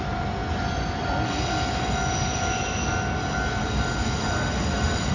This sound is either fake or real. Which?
real